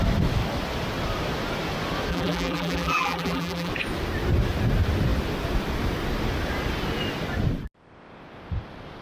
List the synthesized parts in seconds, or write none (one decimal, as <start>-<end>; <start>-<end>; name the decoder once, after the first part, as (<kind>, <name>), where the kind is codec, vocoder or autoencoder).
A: 2.1-3.7 (vocoder, BigVGAN v2)

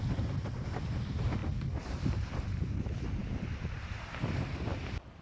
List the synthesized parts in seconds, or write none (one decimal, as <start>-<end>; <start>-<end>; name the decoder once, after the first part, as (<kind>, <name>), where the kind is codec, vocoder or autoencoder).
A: 0.0-1.4 (vocoder, BigVGAN v2); 2.8-5.2

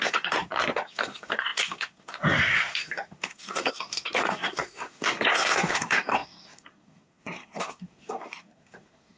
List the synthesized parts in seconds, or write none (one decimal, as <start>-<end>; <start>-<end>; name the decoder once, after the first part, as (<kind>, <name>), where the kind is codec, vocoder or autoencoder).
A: 0.0-9.2 (codec, SNAC)

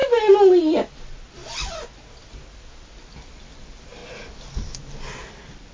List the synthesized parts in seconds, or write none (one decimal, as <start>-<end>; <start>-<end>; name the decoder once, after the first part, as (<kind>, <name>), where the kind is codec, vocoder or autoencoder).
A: none